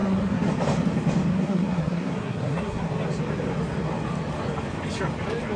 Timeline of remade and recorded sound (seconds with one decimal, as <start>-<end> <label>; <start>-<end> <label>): 0.0-0.5 remade; 0.5-1.3 recorded; 1.3-2.9 remade; 2.9-5.6 recorded